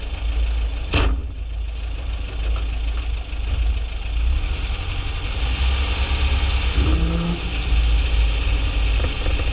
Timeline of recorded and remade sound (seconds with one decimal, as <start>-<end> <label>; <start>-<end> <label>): 0.0-9.5 recorded